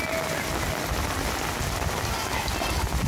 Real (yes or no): yes